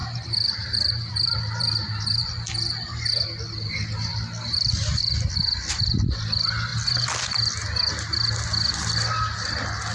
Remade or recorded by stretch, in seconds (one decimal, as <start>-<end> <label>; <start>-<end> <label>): 0.0-2.2 remade; 2.2-9.9 recorded